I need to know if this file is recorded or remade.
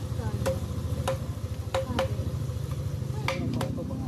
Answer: recorded